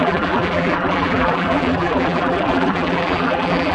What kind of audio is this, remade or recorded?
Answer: remade